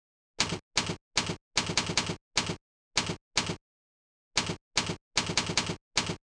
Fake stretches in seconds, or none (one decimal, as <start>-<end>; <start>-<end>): none